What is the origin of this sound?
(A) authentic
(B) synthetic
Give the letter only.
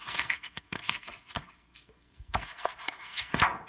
B